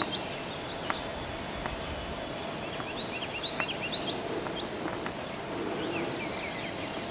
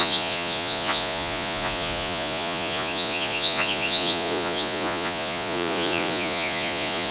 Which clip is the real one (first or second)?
first